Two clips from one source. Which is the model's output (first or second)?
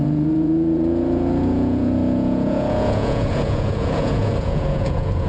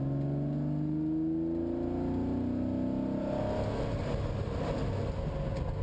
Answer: first